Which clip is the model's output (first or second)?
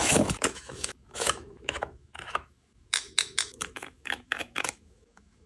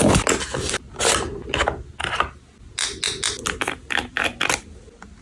first